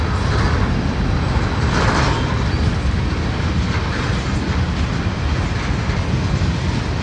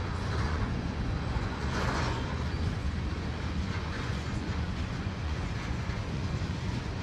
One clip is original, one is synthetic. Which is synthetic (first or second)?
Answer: second